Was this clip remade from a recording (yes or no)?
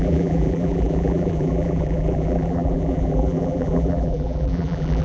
yes